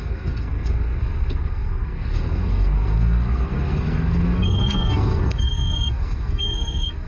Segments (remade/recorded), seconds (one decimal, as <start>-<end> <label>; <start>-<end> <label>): 0.0-7.1 remade